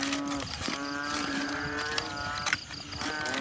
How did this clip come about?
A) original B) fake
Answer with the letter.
A